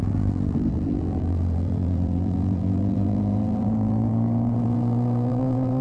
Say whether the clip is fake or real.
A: fake